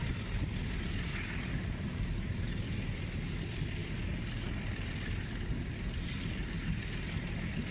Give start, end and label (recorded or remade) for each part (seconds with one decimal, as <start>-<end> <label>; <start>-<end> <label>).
0.0-7.7 recorded